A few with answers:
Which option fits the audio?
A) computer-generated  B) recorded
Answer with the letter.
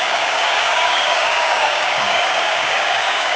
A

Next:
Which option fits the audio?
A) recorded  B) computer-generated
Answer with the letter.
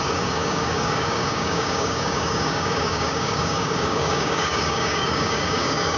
B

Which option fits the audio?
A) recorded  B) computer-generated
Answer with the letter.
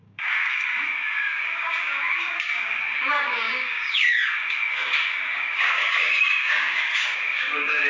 B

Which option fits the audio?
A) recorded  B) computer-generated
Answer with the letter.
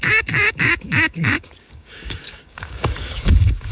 B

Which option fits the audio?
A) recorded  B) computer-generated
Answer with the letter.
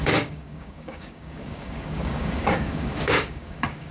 B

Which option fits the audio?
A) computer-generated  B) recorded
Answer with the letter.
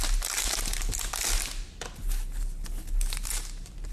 B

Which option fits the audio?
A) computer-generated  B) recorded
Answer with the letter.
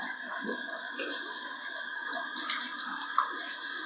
B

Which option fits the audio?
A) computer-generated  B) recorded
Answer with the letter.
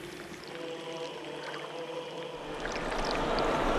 B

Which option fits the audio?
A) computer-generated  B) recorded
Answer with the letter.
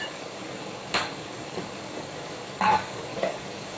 A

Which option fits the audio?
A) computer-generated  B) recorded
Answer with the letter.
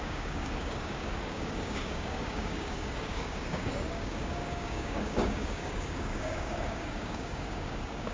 A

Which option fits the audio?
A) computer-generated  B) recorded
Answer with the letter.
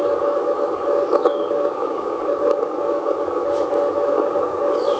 A